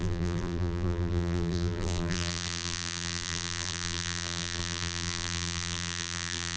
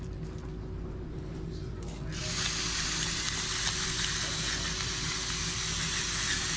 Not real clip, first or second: first